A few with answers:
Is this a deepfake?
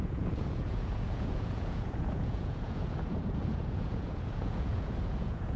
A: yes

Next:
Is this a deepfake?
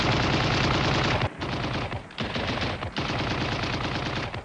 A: no